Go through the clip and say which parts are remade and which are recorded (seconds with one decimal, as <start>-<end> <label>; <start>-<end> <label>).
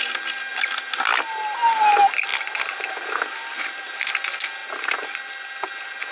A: 0.0-6.1 recorded